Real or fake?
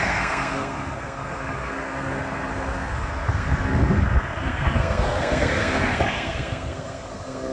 fake